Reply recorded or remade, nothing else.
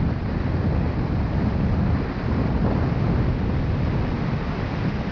recorded